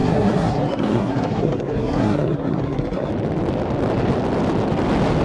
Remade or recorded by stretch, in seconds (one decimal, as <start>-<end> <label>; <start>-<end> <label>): 0.0-3.1 remade; 3.1-5.2 recorded